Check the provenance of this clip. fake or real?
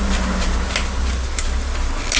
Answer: real